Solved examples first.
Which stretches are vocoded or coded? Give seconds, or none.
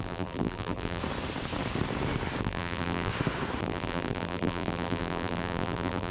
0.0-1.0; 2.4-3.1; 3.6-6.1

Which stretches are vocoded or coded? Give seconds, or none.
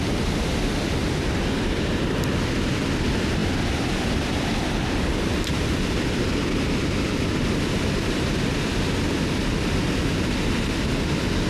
1.0-2.0; 3.4-8.6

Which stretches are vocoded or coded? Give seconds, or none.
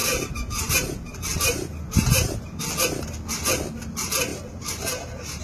0.0-2.6; 4.3-5.4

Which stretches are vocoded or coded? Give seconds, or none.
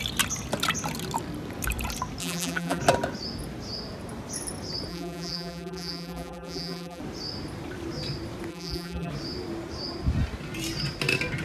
2.2-2.8; 4.9-7.0; 8.5-9.1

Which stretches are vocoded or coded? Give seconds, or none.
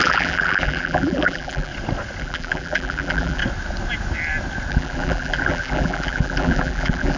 0.0-1.7; 2.2-3.4; 4.7-7.2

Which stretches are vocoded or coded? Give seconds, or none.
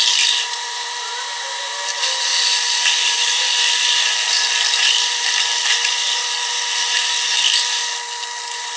0.0-7.8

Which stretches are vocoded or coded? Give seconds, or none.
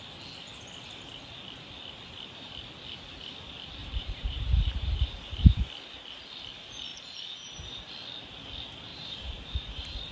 3.8-5.6; 6.9-7.9; 8.9-10.1